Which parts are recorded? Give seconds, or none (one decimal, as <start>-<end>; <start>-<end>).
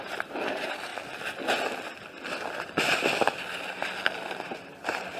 0.9-4.0